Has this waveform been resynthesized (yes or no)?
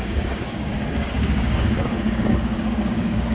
yes